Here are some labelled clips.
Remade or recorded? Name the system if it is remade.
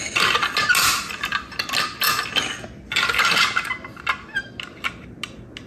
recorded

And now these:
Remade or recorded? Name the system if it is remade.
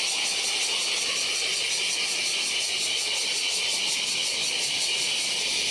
recorded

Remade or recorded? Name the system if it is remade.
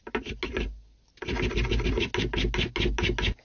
recorded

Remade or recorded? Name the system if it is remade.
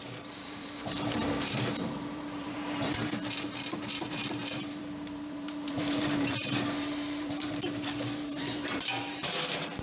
remade, vocoder, BigVGAN v2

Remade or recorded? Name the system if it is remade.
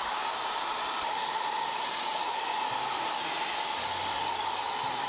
remade, vocoder, BigVGAN v2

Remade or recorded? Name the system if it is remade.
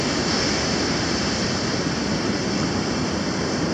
recorded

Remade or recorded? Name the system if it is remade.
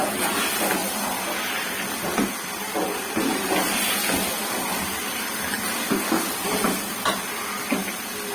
recorded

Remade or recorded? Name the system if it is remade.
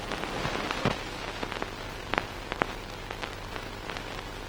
remade, vocoder, BigVGAN v2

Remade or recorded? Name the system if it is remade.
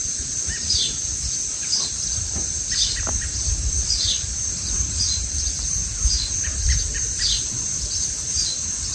remade, vocoder, BigVGAN v2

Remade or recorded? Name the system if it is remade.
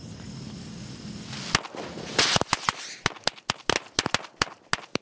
recorded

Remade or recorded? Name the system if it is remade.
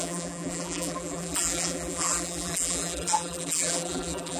remade, vocoder, BigVGAN v2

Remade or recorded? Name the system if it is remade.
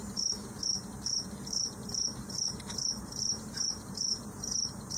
remade, vocoder, BigVGAN v2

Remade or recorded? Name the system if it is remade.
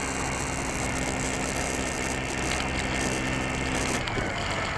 recorded